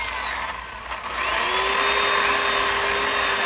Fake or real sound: real